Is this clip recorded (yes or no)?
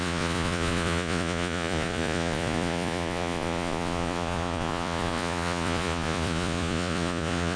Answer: no